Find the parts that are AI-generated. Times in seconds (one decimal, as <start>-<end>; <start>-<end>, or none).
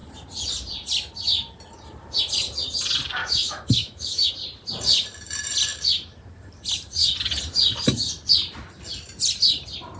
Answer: 3.2-4.3